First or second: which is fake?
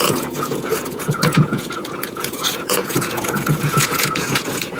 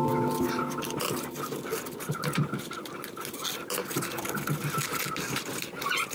first